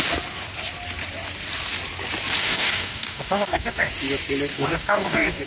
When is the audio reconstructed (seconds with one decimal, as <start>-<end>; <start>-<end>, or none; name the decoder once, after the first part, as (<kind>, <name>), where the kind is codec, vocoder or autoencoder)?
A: 2.4-3.9 (codec, DAC); 4.5-5.5